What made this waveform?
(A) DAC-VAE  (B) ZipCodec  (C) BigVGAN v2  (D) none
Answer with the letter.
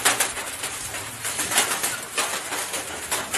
C